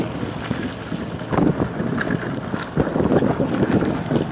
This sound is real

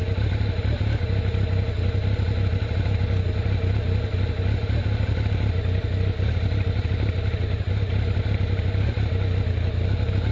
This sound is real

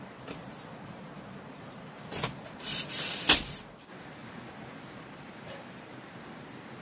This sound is fake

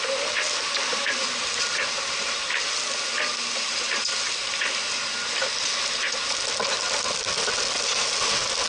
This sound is real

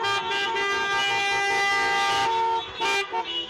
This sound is real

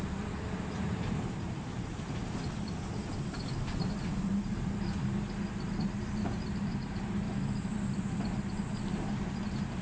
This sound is fake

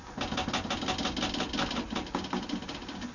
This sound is real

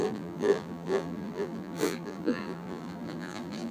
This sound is fake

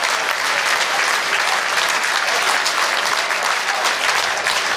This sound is fake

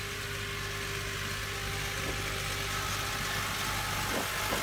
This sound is real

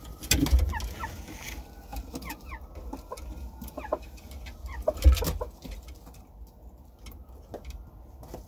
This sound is real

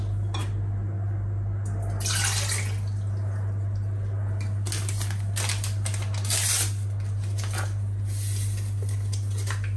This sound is real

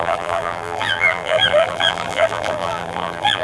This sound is fake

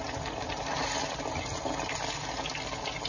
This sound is real